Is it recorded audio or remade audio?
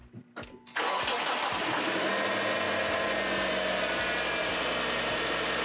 recorded